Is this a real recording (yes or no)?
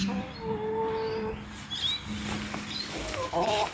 yes